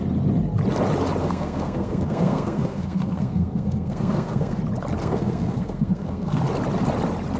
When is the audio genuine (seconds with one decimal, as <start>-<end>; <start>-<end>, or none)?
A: 0.0-1.2; 4.6-5.0; 6.4-7.4